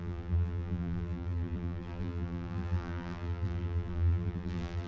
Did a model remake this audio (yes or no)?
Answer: yes